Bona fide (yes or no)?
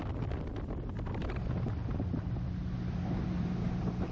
yes